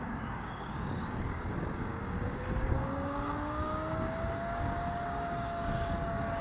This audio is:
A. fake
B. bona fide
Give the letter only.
A